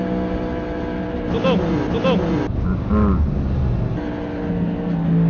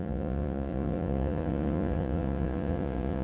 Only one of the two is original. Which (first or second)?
first